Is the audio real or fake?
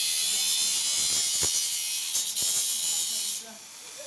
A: real